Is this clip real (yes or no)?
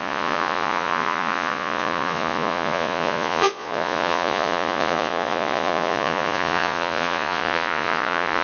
no